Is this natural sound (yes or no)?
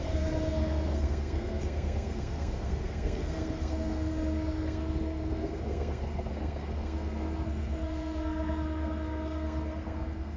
no